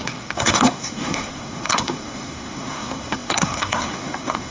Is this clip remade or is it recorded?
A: remade